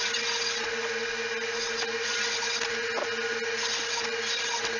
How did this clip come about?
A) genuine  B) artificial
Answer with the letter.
A